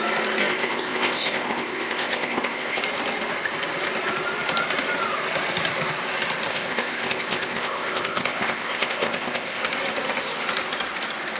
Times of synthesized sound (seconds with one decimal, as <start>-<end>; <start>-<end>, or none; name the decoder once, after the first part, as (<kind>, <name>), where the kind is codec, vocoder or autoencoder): 0.4-2.8 (codec, ZipCodec); 6.5-9.6